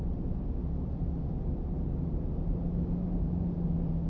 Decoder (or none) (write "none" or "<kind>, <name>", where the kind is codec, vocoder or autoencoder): none